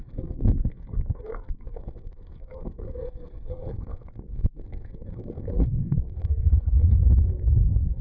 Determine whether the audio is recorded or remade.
remade